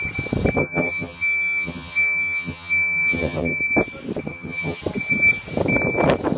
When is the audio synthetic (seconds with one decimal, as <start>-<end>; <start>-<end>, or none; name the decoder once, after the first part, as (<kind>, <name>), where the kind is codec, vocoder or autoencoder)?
0.6-3.6 (vocoder, HiFi-GAN); 4.3-4.8